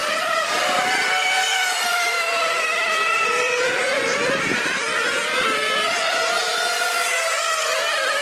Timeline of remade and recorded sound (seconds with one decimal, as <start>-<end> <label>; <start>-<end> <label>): 0.0-8.2 remade